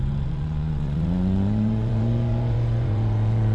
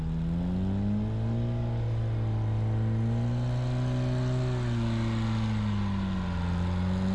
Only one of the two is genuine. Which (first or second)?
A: second